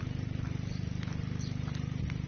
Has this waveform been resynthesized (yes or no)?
no